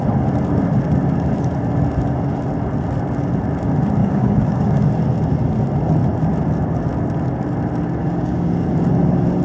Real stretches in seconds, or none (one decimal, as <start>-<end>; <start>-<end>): 0.0-4.0; 4.9-8.0; 8.7-9.4